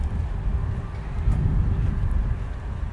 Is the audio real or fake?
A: real